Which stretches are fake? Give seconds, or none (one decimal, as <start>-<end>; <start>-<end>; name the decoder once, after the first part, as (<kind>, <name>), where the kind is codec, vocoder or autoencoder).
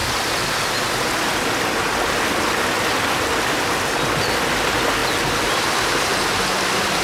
none